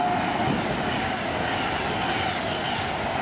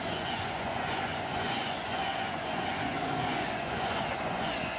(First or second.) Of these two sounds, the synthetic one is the second